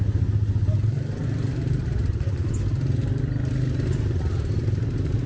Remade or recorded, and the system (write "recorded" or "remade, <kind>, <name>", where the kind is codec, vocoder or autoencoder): recorded